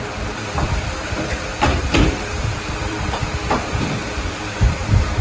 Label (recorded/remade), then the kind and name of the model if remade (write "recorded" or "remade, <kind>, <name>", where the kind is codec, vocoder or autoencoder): remade, vocoder, BigVGAN v2